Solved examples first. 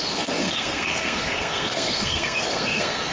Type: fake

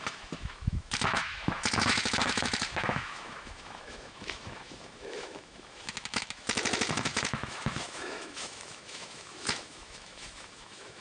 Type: fake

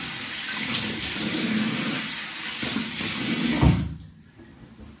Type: real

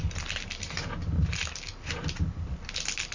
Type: real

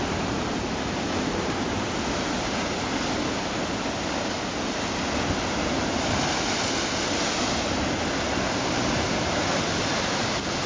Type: real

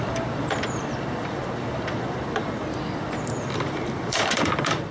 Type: fake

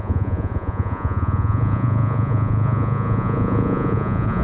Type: fake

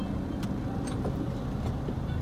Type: real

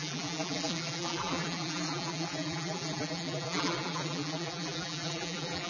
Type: fake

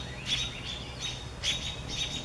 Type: real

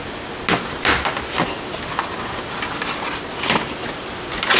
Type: real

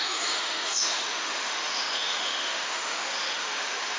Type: fake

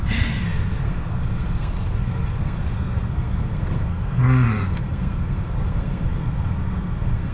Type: fake